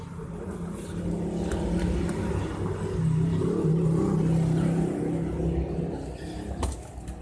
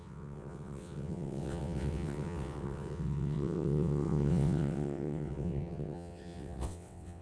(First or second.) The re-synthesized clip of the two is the second